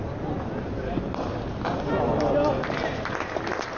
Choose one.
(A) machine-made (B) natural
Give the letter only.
B